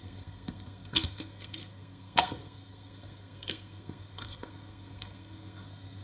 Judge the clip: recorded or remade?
remade